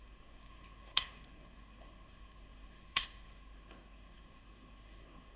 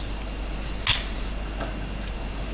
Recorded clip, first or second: second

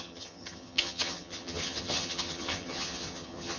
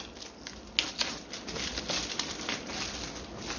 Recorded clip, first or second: second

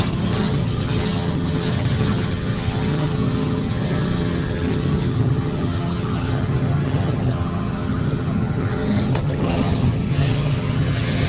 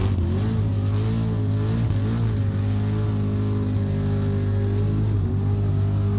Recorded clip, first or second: second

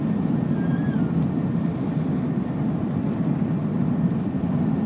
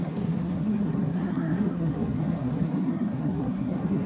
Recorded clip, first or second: first